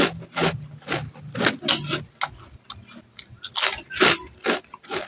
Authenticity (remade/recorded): recorded